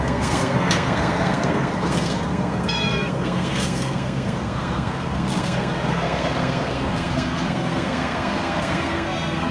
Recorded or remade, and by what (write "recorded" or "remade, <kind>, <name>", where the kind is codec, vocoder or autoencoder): remade, codec, SNAC